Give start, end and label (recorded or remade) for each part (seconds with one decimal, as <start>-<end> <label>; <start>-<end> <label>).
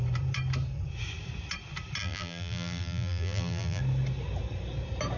0.0-2.0 recorded; 2.0-3.8 remade; 3.8-5.2 recorded